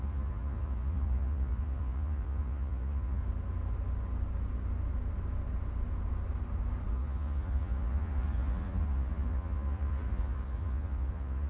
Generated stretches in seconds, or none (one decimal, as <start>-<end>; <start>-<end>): 0.0-3.2; 6.9-11.5